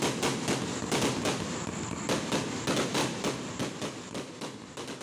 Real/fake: real